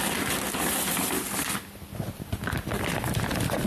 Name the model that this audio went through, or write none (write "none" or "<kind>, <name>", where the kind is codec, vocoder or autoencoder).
none